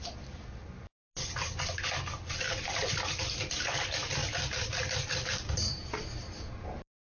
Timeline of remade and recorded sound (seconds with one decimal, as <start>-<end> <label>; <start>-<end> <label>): 0.0-7.0 recorded